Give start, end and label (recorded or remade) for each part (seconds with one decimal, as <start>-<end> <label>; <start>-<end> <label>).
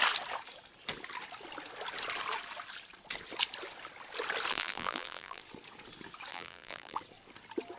0.0-4.5 recorded; 4.5-5.4 remade; 5.4-6.3 recorded; 6.3-7.0 remade; 7.0-7.8 recorded